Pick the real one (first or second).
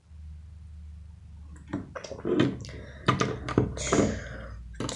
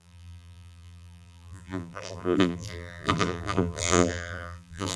first